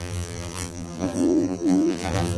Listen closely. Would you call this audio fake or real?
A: fake